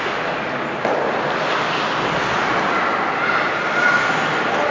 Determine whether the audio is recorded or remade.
recorded